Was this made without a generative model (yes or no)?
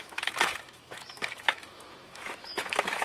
no